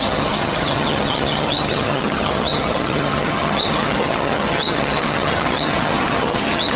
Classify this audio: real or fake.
fake